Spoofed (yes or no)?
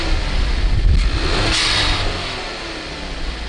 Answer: no